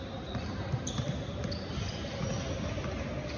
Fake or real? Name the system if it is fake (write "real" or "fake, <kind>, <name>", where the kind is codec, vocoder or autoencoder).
real